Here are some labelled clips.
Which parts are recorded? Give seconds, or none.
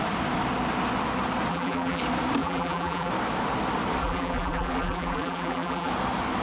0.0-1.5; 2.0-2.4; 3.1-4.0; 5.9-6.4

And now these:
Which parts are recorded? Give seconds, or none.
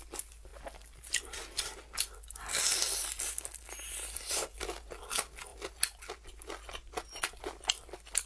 0.0-8.3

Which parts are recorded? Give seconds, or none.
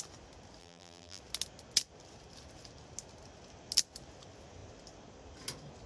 0.0-0.6; 1.2-5.9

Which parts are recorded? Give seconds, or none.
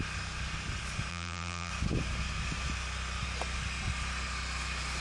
0.0-1.1; 1.7-5.0